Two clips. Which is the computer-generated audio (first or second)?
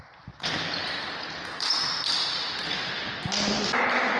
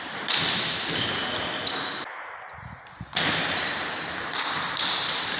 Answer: second